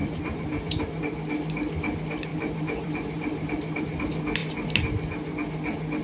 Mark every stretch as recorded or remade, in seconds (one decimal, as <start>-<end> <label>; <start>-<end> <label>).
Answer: 0.0-1.0 remade; 1.0-2.3 recorded; 2.3-3.8 remade; 3.8-6.0 recorded